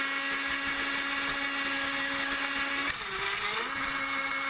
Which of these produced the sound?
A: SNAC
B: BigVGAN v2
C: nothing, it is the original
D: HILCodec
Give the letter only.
C